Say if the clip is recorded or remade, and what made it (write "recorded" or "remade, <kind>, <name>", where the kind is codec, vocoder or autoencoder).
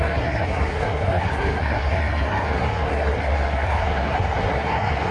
remade, codec, SNAC